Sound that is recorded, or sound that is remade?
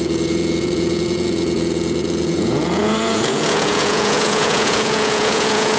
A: remade